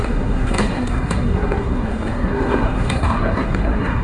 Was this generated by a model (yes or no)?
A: yes